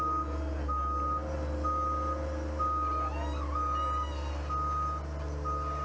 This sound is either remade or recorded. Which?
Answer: recorded